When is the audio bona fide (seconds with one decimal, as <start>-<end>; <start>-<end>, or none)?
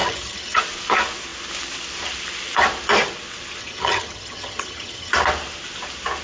0.6-3.6; 5.1-6.2